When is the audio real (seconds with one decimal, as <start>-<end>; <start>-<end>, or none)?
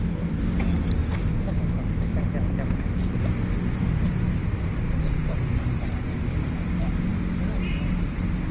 0.0-8.5